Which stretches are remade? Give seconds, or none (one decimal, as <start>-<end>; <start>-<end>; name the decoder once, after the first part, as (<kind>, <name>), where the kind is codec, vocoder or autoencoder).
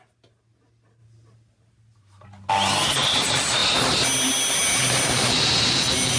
none